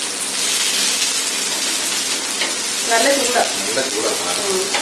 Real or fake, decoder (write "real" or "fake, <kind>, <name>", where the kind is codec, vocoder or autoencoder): real